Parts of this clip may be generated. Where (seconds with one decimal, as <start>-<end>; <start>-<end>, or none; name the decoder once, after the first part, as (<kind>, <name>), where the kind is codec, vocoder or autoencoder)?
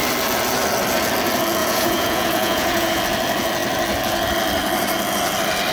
1.6-3.0 (vocoder, Vocos)